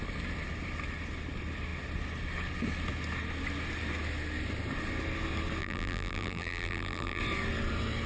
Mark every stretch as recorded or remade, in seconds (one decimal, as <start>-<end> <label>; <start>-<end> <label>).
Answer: 0.0-5.6 recorded; 5.6-7.2 remade; 7.2-8.1 recorded